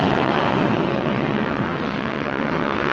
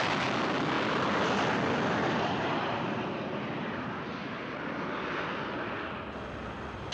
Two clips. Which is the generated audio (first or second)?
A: first